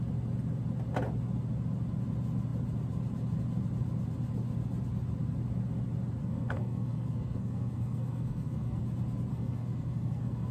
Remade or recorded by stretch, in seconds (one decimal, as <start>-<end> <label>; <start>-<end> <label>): 0.0-6.2 recorded; 6.2-8.8 remade; 8.8-9.3 recorded; 9.3-10.5 remade